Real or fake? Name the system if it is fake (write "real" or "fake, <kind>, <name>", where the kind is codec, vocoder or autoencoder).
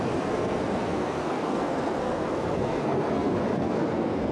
fake, codec, SNAC